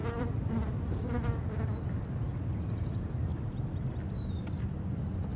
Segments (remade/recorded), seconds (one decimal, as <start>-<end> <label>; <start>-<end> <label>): 0.0-5.4 recorded